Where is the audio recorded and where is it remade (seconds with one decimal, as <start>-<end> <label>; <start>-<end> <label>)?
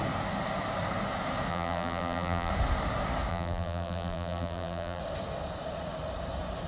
0.0-1.5 recorded; 1.5-2.5 remade; 2.5-3.3 recorded; 3.3-5.0 remade; 5.0-6.7 recorded